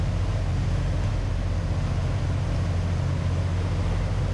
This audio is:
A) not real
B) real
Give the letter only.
B